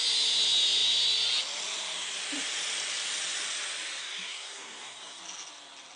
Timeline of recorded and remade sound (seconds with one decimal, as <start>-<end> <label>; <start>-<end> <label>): 0.0-4.0 recorded; 4.0-5.2 remade; 5.2-6.0 recorded